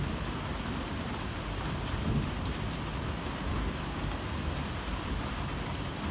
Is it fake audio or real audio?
real